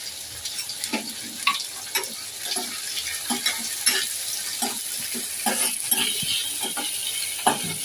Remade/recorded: recorded